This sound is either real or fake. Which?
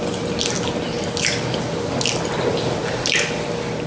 real